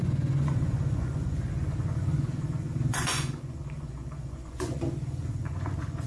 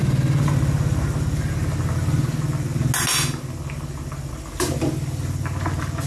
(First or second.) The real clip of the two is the second